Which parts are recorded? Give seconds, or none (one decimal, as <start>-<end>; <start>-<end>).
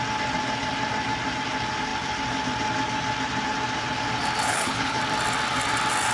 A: 0.0-4.5; 5.0-6.1